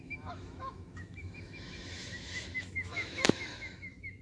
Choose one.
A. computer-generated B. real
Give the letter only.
A